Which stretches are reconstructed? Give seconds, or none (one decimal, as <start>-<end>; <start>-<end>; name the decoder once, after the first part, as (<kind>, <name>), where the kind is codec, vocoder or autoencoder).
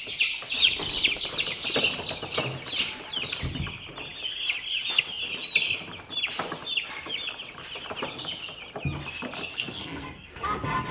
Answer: 9.5-10.4 (codec, SNAC)